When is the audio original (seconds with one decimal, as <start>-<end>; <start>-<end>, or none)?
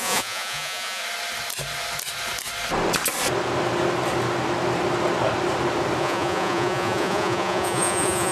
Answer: 1.0-6.0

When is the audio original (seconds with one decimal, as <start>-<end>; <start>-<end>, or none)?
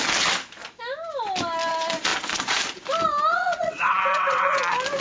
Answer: 0.0-3.3; 4.6-5.0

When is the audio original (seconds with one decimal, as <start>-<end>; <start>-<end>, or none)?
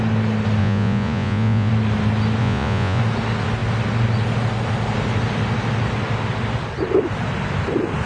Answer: 0.0-0.6; 1.7-2.4; 3.0-8.1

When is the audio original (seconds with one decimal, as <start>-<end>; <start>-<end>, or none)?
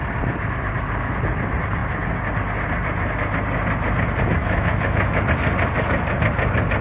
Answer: 0.0-4.4; 5.3-6.8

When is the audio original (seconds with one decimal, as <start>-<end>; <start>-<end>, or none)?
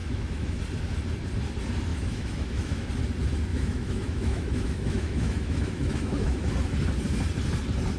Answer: 0.6-1.9; 2.9-3.5; 6.5-8.0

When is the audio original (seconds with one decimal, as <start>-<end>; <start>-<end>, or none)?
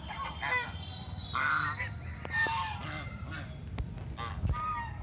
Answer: 0.0-5.0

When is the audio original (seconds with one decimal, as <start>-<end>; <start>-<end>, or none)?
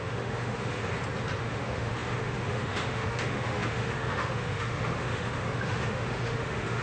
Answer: 0.8-1.4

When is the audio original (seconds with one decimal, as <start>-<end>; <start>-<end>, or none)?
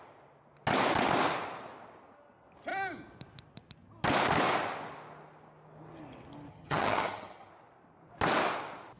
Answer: 0.0-6.5; 7.5-9.0